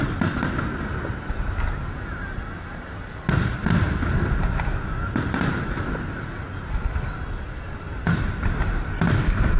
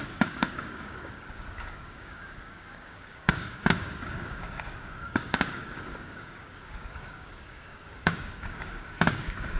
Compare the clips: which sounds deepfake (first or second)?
second